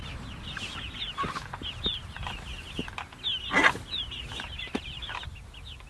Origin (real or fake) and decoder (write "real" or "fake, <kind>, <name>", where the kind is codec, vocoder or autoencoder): real